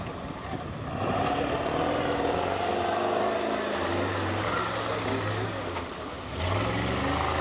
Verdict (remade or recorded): recorded